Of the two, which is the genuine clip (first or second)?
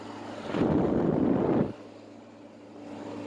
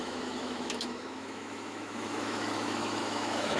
first